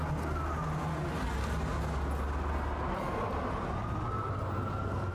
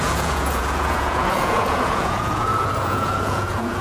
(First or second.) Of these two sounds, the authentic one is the first